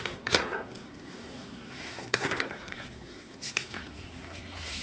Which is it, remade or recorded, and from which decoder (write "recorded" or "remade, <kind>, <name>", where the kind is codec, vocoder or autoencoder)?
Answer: remade, codec, SNAC